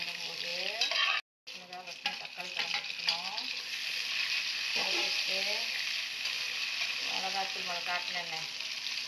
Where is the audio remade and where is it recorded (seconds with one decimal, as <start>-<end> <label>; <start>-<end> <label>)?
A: 0.0-9.1 recorded